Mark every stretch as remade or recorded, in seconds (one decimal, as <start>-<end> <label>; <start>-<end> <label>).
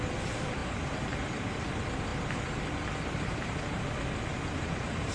0.0-0.6 recorded; 0.6-1.7 remade; 1.7-4.3 recorded; 4.3-5.1 remade